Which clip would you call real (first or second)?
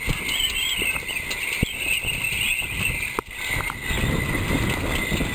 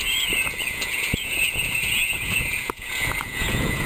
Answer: first